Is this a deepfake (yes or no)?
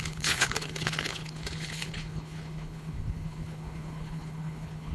yes